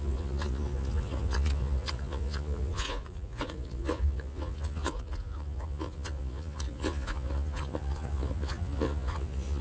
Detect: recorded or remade remade